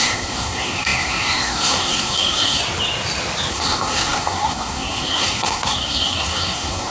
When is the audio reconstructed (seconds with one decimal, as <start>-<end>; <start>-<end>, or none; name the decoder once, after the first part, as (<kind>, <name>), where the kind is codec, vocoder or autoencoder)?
0.0-2.6 (codec, SNAC); 3.5-6.9